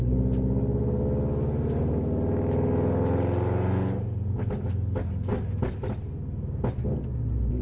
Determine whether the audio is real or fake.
real